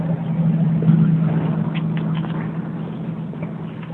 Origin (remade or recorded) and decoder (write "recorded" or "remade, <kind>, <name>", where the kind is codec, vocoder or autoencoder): recorded